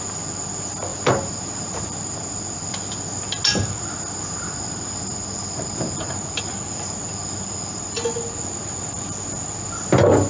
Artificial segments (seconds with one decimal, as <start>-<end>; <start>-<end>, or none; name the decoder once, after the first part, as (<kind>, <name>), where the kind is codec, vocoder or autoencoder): none